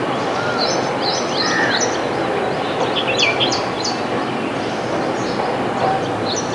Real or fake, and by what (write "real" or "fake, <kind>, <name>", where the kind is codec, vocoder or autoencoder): real